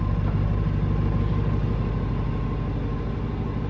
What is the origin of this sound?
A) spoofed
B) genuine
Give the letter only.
B